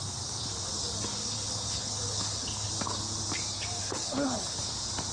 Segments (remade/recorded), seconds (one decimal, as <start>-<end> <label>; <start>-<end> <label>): 0.0-1.2 recorded; 1.2-2.7 remade; 2.7-3.8 recorded; 3.8-4.6 remade; 4.6-5.1 recorded